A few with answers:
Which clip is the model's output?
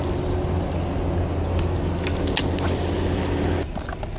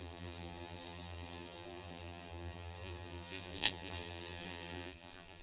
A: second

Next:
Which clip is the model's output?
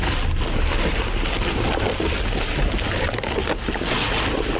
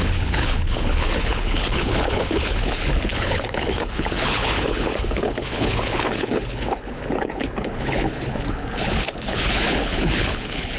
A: second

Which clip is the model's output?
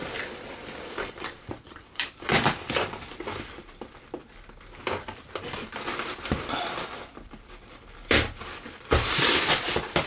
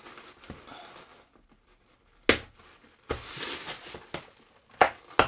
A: first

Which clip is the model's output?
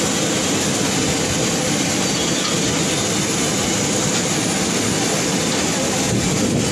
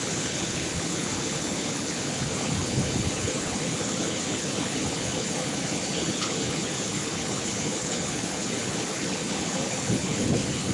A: second